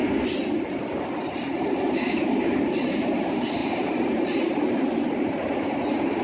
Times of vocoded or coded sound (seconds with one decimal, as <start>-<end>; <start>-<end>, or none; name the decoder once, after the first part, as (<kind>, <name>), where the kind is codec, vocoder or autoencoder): 1.0-6.2 (vocoder, BigVGAN v2)

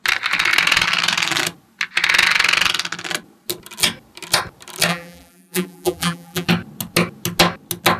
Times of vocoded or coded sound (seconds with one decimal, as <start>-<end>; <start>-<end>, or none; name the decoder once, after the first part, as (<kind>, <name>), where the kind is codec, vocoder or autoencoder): 4.9-6.5 (vocoder, BigVGAN v2)

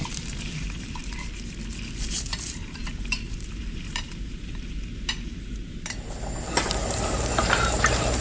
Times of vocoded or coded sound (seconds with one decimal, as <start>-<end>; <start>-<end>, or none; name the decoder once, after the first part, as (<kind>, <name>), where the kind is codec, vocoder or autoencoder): 0.0-1.0 (vocoder, BigVGAN v2); 1.9-8.2

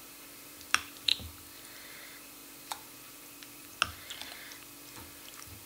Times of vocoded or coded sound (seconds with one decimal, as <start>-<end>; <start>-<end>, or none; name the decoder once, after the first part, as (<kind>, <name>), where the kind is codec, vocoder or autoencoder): 0.0-1.1 (vocoder, BigVGAN v2); 1.9-3.7; 5.3-5.7

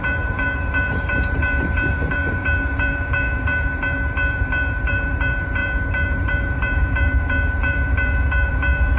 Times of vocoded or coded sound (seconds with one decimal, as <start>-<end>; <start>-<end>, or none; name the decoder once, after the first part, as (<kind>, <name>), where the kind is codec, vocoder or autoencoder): 0.0-9.0 (vocoder, BigVGAN v2)

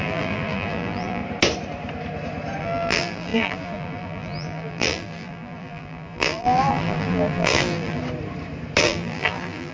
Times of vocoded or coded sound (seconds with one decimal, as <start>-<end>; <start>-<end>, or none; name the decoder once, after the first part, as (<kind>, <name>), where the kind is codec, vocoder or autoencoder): 0.0-1.2 (vocoder, BigVGAN v2); 2.6-8.0; 8.8-9.7

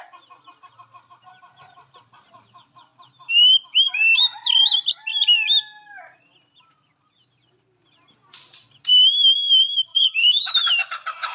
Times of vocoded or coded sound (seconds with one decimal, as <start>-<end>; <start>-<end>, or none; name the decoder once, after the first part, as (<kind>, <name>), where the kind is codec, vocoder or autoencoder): 9.9-10.5 (vocoder, BigVGAN v2)

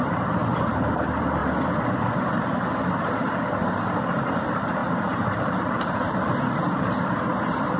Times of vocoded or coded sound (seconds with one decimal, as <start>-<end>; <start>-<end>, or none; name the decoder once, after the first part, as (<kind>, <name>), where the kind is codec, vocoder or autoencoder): 0.0-1.4 (vocoder, BigVGAN v2); 4.2-7.8